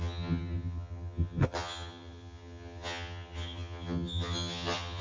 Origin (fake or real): fake